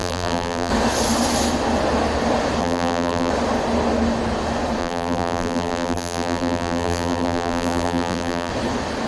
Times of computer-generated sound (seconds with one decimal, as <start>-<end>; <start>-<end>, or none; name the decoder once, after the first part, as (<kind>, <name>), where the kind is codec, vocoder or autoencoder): 0.0-0.7 (vocoder, BigVGAN v2); 2.6-3.3; 4.8-8.5

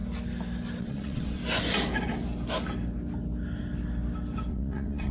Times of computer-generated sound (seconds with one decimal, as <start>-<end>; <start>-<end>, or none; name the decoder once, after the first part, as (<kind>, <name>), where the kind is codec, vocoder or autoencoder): 0.8-1.4 (vocoder, WaveNeXt); 4.5-5.1

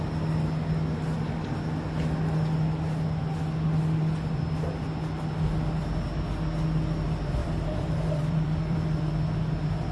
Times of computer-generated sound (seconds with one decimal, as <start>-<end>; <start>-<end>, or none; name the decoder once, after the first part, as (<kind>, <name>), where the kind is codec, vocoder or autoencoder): 7.4-9.1 (vocoder, BigVGAN v2)